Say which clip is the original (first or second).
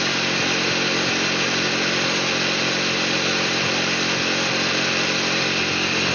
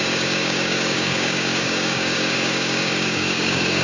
first